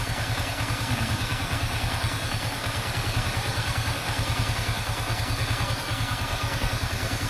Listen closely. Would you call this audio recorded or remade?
remade